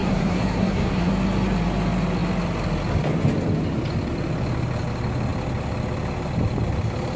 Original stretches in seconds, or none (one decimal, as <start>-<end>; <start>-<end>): 1.1-7.2